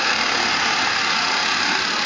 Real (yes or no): yes